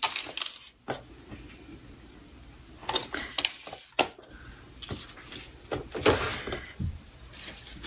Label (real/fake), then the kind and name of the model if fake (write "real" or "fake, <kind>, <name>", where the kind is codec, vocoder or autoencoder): real